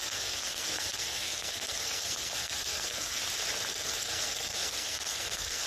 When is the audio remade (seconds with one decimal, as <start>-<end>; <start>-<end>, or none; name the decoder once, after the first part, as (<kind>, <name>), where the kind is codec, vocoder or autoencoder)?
0.0-3.2 (codec, SNAC); 3.7-5.7